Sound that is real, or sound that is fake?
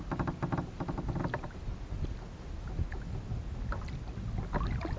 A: real